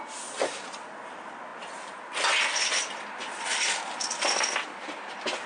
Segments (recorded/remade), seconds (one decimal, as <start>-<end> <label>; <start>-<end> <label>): 0.0-5.5 recorded